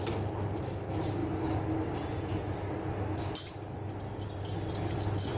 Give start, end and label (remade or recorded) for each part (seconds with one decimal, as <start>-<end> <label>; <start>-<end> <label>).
0.0-5.4 recorded